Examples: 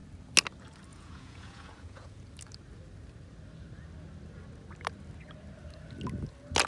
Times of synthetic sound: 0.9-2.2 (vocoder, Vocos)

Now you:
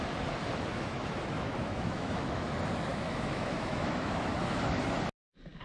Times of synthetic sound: 0.7-2.5 (autoencoder, DAC-VAE); 2.9-4.8

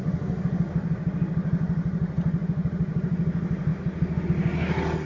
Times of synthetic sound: none

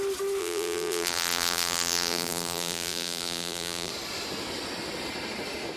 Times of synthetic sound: 0.4-3.9 (vocoder, BigVGAN v2)

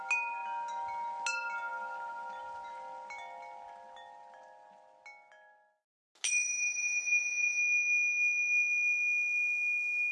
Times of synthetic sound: 6.8-7.6 (vocoder, Vocos)